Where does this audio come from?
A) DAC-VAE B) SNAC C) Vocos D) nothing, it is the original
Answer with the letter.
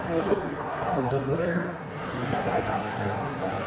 B